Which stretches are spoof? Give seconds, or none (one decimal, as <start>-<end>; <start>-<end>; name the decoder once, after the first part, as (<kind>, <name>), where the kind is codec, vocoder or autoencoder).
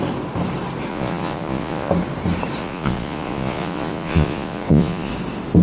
0.9-1.9 (vocoder, Vocos); 2.6-5.1